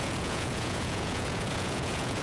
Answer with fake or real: fake